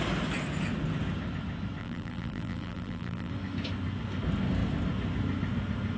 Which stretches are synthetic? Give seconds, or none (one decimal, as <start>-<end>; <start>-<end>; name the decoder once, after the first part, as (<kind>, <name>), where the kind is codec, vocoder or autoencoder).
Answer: 1.8-3.3 (vocoder, BigVGAN v2)